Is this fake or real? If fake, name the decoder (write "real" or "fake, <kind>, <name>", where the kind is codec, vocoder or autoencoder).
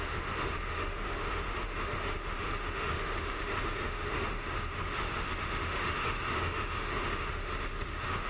fake, autoencoder, DAC-VAE